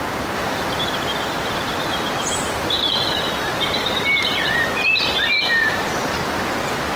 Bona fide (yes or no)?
no